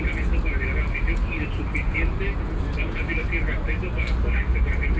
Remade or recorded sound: recorded